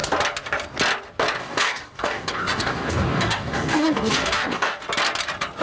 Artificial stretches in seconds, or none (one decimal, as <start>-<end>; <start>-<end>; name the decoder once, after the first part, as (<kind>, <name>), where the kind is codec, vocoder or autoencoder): 1.4-4.8 (codec, DAC)